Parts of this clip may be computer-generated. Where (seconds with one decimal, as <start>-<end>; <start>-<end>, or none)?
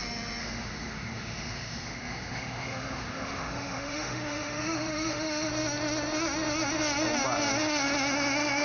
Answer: 0.4-5.5